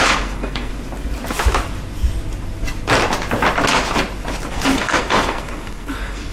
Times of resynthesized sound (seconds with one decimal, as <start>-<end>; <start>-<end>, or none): 0.0-0.7; 4.5-6.3